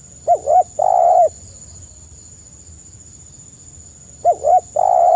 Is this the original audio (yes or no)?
yes